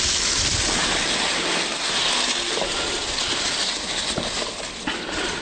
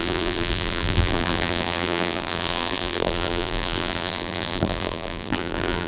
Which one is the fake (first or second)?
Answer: second